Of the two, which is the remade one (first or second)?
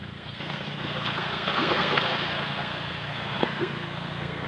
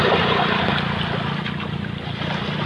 first